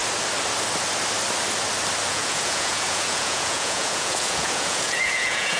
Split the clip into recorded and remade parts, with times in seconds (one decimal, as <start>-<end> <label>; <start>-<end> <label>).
0.0-2.1 recorded; 2.1-5.6 remade